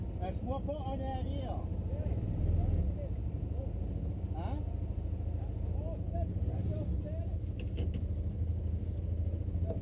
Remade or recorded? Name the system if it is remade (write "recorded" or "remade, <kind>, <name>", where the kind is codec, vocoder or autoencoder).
recorded